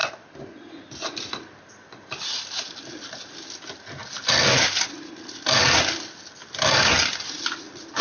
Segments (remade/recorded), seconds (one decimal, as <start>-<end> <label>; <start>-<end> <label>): 0.0-8.0 recorded